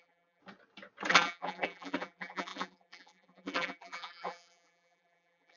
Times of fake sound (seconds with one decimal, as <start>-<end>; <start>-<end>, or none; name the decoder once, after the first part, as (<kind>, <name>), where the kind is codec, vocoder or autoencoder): 0.0-0.4 (vocoder, BigVGAN v2); 1.1-5.6